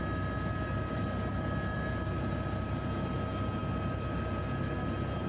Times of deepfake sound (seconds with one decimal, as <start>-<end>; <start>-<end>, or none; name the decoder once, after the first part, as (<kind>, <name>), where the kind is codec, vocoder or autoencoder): none